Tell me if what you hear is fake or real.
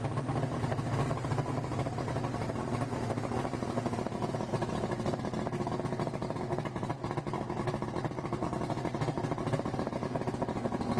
real